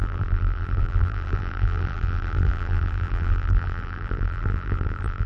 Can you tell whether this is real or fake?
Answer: fake